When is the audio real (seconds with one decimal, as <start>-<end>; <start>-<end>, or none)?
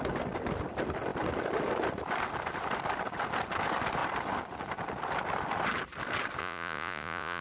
0.0-6.4